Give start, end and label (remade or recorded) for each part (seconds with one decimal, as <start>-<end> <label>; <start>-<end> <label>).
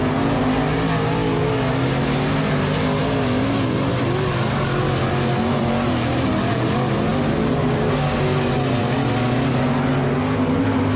0.0-11.0 recorded